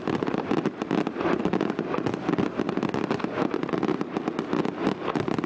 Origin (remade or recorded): recorded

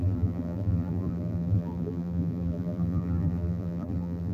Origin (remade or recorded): remade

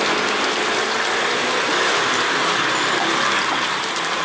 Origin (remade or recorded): recorded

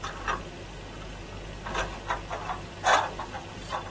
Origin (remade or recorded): recorded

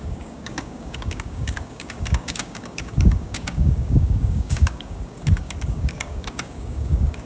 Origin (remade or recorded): remade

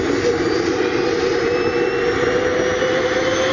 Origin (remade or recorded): recorded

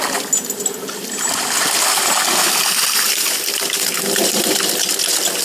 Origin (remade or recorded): recorded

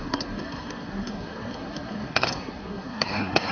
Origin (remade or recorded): remade